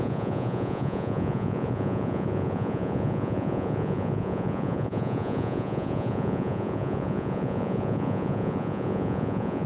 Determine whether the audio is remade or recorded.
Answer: remade